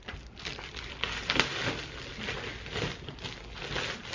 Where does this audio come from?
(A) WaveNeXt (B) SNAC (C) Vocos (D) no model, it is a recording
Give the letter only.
D